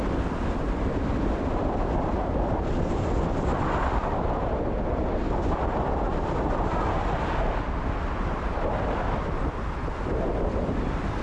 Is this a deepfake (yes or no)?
no